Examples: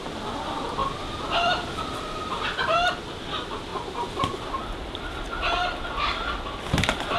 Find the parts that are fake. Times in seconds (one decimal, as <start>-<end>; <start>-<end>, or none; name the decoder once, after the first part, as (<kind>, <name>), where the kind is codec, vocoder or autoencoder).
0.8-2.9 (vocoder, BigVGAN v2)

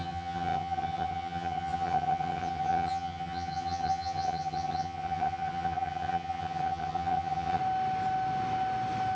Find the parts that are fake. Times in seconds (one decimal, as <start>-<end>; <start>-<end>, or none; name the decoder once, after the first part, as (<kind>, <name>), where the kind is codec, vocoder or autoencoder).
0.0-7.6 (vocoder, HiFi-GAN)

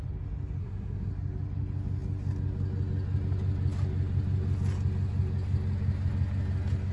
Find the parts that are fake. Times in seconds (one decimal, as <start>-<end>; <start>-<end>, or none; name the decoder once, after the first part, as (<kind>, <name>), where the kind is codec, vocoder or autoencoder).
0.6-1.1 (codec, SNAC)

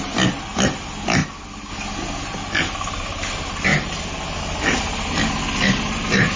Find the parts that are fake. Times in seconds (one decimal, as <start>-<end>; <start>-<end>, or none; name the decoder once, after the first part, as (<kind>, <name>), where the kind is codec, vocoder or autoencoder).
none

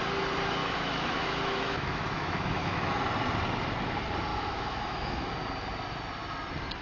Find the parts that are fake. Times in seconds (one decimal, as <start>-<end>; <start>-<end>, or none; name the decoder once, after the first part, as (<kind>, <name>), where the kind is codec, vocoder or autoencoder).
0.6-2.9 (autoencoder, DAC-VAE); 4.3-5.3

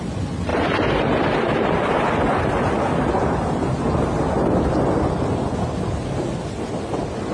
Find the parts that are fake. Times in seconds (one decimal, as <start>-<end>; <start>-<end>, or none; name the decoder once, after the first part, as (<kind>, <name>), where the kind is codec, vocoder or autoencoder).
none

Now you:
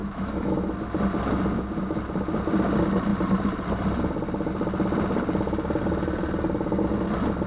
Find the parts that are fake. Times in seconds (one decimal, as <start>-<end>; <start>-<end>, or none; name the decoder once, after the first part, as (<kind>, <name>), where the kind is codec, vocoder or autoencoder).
0.0-0.7 (autoencoder, DAC-VAE)

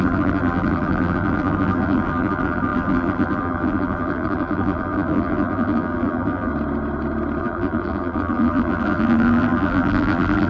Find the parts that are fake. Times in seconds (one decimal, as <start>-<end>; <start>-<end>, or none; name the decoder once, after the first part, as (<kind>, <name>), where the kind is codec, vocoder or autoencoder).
0.0-6.5 (vocoder, BigVGAN v2); 7.4-10.5